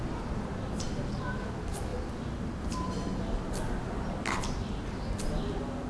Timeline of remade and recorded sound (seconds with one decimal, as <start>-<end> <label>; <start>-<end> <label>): 0.0-5.9 recorded